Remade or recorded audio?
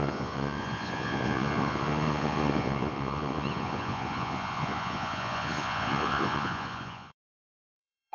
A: remade